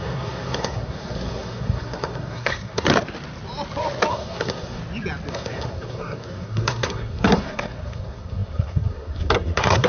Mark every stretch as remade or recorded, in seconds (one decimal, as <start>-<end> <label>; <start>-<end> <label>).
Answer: 0.0-2.9 remade; 2.9-4.1 recorded; 4.1-4.8 remade; 4.8-5.3 recorded; 5.3-9.9 remade